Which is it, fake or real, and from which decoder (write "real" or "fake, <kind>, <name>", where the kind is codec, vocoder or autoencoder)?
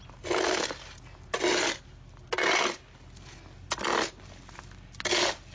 real